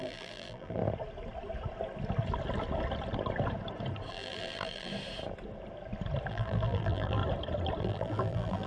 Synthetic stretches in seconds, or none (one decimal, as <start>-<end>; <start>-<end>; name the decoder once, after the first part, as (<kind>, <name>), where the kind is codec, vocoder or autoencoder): 0.0-0.8 (vocoder, BigVGAN v2); 4.1-4.9; 6.3-7.2; 7.8-8.7